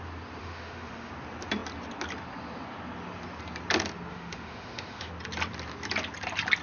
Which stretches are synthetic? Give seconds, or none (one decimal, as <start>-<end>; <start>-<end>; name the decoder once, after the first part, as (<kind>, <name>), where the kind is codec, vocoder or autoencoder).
0.4-1.1 (autoencoder, DAC-VAE); 4.1-5.1